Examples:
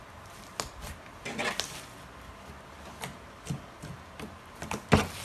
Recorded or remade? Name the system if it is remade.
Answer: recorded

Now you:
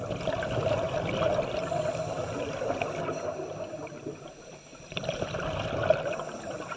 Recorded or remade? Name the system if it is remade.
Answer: recorded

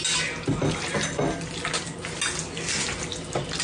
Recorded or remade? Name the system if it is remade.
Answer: recorded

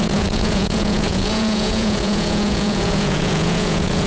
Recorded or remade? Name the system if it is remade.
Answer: remade, vocoder, Vocos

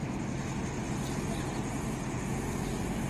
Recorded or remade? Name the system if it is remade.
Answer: recorded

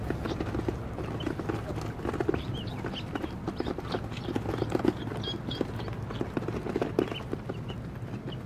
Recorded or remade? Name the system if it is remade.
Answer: recorded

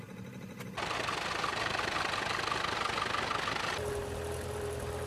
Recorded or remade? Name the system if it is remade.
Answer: recorded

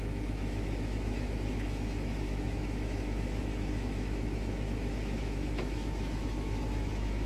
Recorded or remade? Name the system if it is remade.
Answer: remade, autoencoder, DAC-VAE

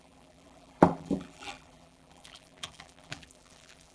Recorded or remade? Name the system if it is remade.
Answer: remade, vocoder, BigVGAN v2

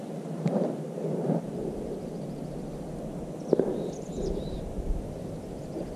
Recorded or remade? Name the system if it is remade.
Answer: remade, vocoder, BigVGAN v2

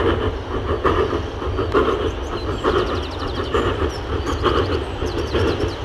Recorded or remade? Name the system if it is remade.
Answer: recorded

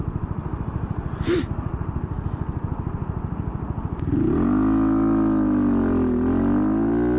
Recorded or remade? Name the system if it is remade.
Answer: recorded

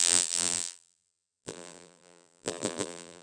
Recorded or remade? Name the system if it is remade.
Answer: remade, vocoder, BigVGAN v2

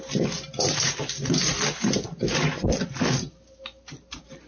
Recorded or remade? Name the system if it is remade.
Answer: recorded